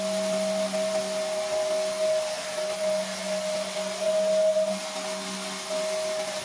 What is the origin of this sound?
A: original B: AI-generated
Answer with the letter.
A